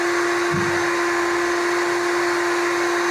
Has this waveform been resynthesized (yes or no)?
no